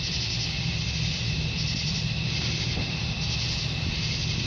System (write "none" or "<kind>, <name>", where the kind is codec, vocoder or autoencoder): none